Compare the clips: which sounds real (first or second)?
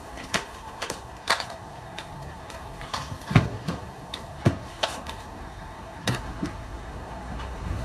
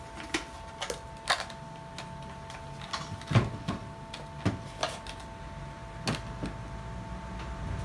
second